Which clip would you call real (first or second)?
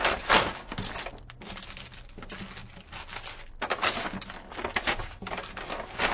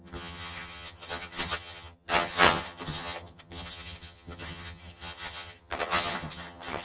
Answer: first